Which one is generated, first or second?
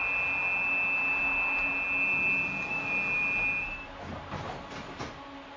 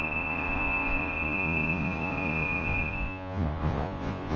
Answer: second